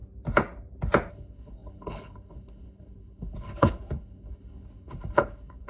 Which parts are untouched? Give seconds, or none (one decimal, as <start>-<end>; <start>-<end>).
0.0-1.1